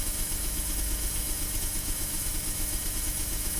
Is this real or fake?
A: fake